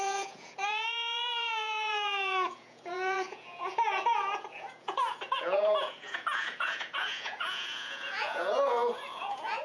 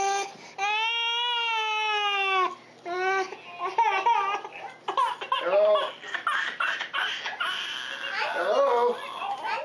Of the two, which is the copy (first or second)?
first